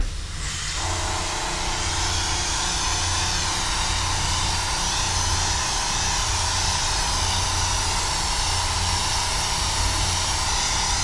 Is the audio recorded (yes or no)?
yes